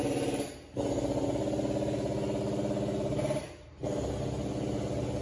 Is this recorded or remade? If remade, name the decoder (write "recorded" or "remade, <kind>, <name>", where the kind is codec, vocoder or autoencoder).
recorded